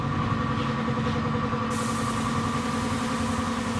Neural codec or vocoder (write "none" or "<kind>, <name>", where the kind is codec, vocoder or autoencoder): none